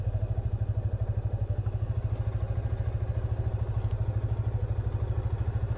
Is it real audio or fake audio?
real